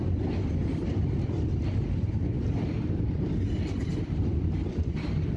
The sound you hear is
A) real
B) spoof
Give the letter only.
A